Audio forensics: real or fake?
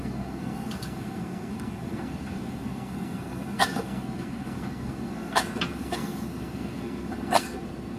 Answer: fake